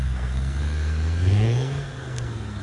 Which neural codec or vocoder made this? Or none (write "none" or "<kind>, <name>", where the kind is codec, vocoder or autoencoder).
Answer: codec, SNAC